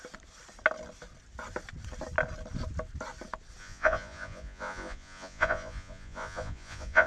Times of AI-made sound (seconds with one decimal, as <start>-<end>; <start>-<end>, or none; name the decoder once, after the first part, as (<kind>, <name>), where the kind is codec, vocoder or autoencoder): 3.6-7.1 (vocoder, Vocos)